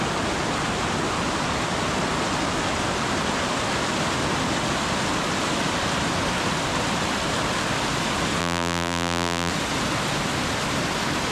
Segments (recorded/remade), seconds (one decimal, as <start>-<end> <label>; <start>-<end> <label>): 0.0-8.4 recorded; 8.4-9.5 remade; 9.5-11.3 recorded